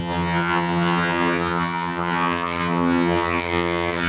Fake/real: fake